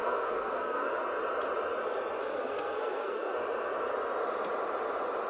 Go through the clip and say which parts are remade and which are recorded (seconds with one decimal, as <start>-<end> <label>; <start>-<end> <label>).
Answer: 0.0-1.0 remade; 1.0-2.2 recorded; 2.2-3.4 remade; 3.4-5.3 recorded

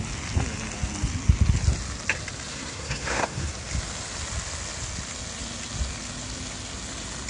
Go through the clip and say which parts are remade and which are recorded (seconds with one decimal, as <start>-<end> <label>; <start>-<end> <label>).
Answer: 0.0-2.5 recorded; 2.5-3.5 remade; 3.5-7.3 recorded

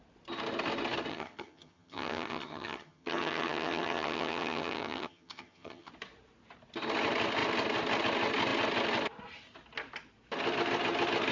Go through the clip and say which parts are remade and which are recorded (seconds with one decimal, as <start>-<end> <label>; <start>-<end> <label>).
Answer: 0.0-1.1 recorded; 1.1-5.9 remade; 5.9-11.3 recorded